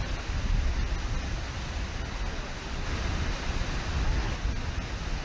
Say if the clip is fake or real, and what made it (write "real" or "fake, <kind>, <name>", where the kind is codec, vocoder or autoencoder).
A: real